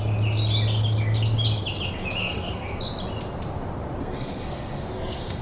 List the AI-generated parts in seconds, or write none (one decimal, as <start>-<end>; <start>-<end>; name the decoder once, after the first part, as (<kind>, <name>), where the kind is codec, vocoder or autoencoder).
2.2-2.8 (codec, SNAC); 4.0-5.4